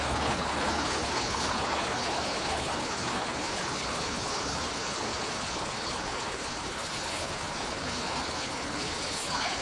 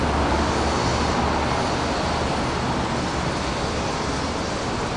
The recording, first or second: second